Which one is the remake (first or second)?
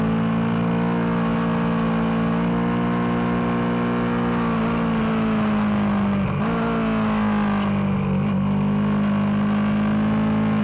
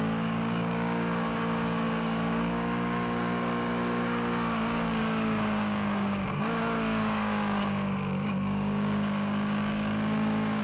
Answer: second